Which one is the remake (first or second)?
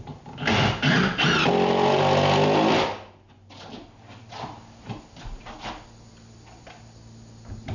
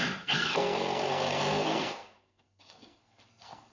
second